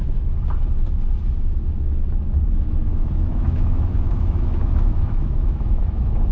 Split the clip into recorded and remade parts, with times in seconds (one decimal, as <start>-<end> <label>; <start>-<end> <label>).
0.0-2.9 recorded; 2.9-6.3 remade